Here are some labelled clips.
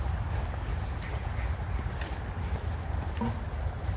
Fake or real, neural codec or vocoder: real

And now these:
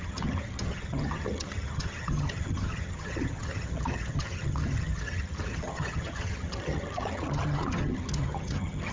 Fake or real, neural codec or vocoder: fake, vocoder, HiFi-GAN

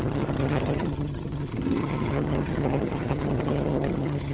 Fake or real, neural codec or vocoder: fake, vocoder, HiFi-GAN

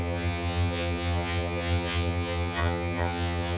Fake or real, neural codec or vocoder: fake, vocoder, HiFi-GAN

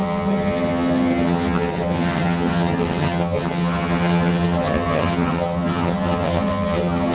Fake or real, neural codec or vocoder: fake, vocoder, HiFi-GAN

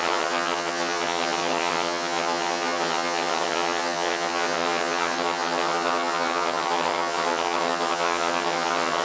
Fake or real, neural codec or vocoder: fake, vocoder, HiFi-GAN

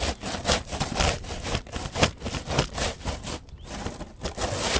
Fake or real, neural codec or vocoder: real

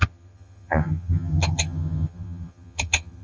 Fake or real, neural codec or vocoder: fake, vocoder, HiFi-GAN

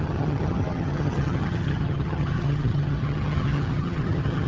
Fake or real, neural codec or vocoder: fake, vocoder, HiFi-GAN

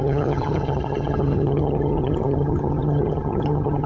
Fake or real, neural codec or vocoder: fake, vocoder, HiFi-GAN